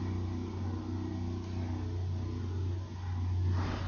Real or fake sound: real